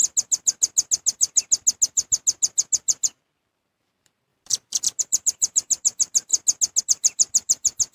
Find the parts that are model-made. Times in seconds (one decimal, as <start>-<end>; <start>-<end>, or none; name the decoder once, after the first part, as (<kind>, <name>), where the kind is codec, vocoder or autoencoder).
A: 3.4-6.3 (vocoder, BigVGAN v2); 6.8-7.9